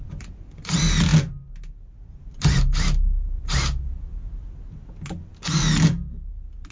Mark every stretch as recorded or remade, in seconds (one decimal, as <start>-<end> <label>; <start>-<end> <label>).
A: 0.0-6.7 recorded